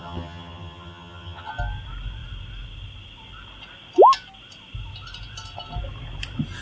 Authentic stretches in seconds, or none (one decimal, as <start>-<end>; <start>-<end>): 1.5-6.6